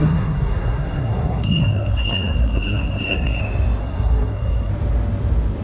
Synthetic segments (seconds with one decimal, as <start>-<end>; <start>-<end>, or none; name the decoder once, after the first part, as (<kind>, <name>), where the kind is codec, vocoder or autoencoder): 0.0-3.4 (codec, SNAC); 3.8-4.7